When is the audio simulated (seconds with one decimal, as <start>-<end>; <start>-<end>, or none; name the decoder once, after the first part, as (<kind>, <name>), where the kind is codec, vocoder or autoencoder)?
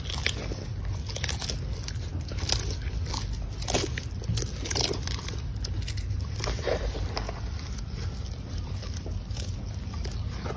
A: none